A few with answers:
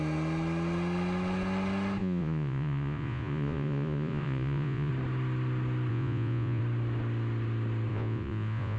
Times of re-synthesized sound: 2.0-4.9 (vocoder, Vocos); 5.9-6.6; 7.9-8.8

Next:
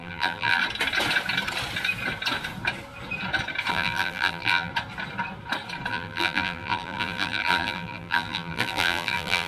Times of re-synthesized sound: 0.0-0.6 (vocoder, BigVGAN v2); 3.7-4.7; 5.9-9.5

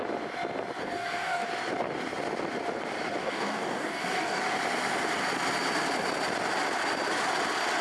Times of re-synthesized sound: 0.8-1.5 (codec, DAC); 3.2-4.4

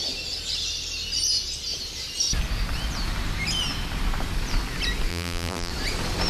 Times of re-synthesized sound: 5.1-5.7 (vocoder, BigVGAN v2)